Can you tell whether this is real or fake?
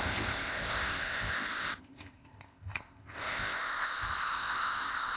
fake